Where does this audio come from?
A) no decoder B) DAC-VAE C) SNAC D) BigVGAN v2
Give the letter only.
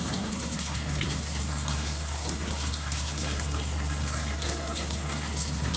C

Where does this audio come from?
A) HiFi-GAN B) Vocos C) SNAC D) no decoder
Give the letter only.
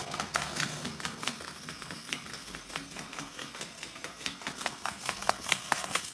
C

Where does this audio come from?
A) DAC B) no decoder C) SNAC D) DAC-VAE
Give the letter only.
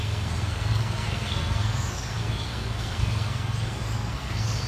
C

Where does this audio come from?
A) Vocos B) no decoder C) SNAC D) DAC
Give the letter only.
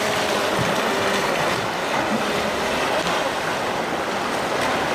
B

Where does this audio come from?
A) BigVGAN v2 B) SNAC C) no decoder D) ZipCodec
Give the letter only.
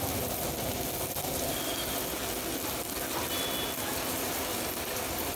C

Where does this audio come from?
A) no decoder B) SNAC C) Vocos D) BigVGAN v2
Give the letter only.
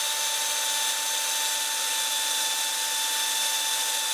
A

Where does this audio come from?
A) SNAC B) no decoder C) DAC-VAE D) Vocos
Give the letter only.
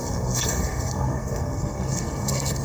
A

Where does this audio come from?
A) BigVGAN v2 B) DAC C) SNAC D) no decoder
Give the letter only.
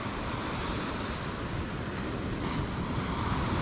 D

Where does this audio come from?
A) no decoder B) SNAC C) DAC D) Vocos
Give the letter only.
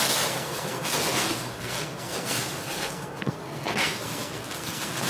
B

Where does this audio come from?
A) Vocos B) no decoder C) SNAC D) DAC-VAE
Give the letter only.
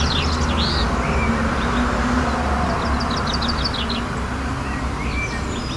B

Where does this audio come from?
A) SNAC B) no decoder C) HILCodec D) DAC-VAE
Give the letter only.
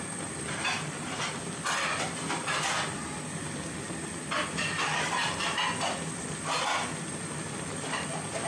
B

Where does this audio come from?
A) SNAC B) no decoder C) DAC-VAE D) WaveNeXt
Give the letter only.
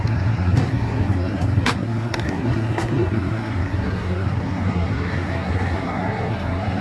A